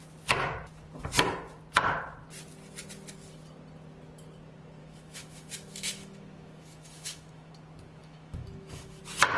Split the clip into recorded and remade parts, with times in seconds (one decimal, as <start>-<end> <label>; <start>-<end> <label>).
0.0-4.8 recorded; 4.8-7.5 remade; 7.5-8.0 recorded; 8.0-9.0 remade; 9.0-9.4 recorded